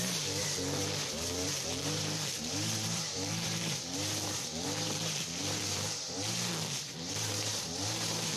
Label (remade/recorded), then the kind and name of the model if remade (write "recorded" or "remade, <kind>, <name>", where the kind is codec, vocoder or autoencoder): remade, vocoder, BigVGAN v2